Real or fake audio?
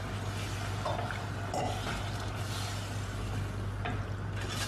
real